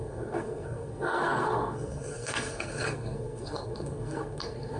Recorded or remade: remade